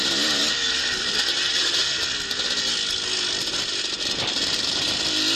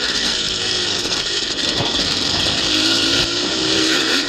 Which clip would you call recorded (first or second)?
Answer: first